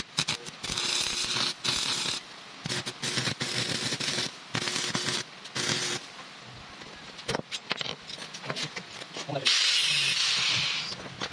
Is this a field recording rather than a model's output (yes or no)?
yes